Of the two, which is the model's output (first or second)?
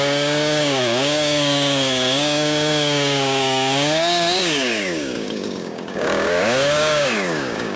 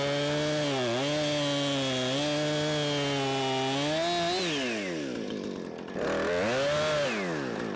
first